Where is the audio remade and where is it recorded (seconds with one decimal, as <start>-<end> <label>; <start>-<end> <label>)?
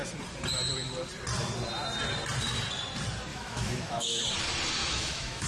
0.0-3.3 recorded; 3.3-4.2 remade; 4.2-4.8 recorded; 4.8-5.5 remade